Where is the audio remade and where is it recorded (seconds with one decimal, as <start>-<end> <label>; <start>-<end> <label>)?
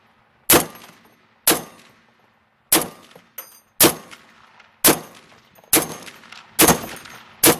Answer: 0.0-7.6 recorded